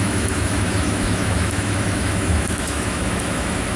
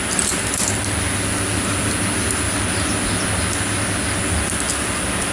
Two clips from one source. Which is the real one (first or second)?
second